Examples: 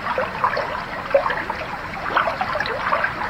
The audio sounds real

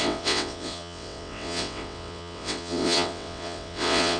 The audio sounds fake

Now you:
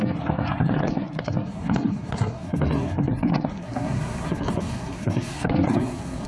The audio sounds fake